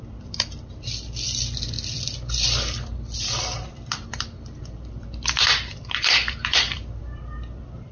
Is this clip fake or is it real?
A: fake